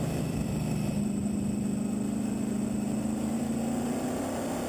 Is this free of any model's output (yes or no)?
yes